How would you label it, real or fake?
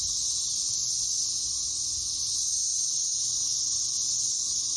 real